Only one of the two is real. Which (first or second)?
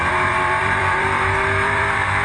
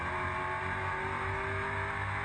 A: second